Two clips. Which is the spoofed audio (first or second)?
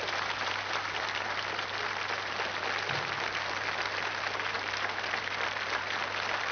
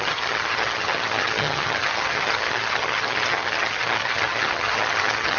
second